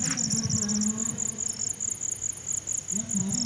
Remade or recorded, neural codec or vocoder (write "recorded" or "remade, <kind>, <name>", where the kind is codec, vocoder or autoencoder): recorded